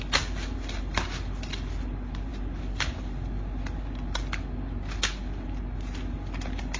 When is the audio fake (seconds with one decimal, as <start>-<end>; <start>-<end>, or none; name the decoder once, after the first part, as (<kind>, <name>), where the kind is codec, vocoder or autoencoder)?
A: none